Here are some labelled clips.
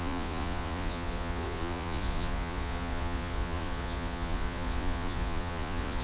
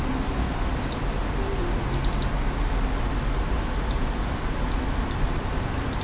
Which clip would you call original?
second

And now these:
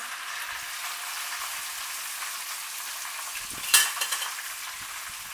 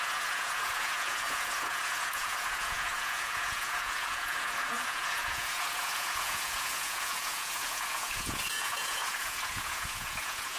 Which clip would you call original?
first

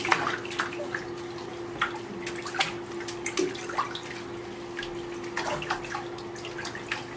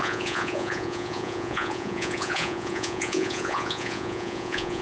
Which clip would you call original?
first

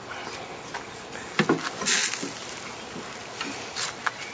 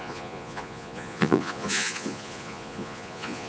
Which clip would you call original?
first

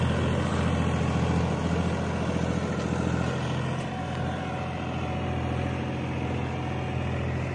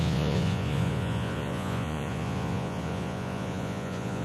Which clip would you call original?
first